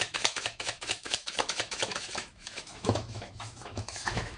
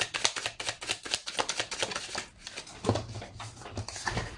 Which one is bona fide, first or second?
second